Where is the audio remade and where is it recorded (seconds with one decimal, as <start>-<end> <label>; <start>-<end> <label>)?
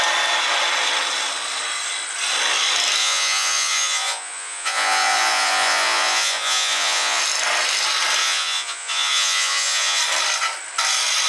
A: 0.0-3.0 recorded; 3.0-7.2 remade; 7.2-8.2 recorded; 8.2-10.0 remade; 10.0-11.3 recorded